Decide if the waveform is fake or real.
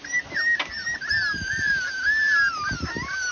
real